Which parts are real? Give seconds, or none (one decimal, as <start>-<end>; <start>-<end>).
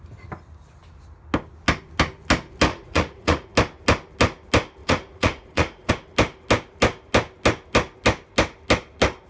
0.0-2.7; 3.5-4.8; 5.9-9.3